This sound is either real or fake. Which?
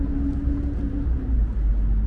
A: real